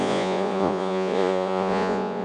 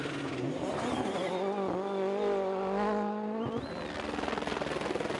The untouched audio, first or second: second